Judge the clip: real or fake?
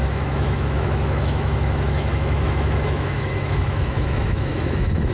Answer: fake